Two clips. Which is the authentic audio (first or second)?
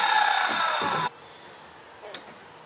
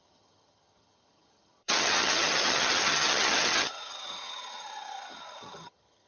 first